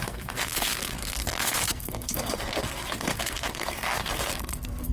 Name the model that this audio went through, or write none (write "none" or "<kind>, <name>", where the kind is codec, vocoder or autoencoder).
codec, SNAC